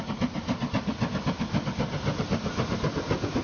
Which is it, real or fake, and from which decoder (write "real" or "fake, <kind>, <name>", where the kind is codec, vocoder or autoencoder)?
real